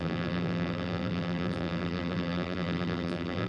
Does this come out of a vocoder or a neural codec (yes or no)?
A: yes